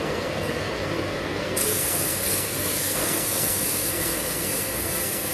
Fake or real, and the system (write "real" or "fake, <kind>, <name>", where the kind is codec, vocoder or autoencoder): fake, codec, SNAC